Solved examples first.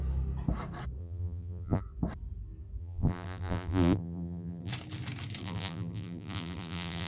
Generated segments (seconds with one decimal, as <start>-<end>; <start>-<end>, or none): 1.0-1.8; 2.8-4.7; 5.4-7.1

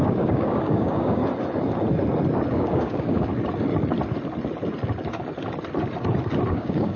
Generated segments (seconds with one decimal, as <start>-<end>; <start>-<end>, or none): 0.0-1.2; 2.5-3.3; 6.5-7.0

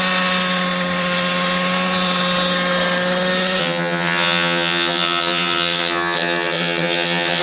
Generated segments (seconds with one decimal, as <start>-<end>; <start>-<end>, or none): 3.6-7.4

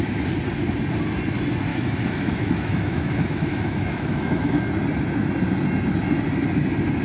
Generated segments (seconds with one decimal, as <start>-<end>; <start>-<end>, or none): 1.7-4.6